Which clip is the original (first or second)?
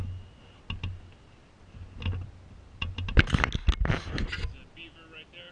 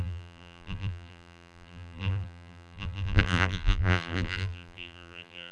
first